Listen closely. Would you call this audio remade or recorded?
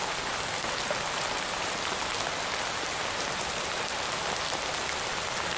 recorded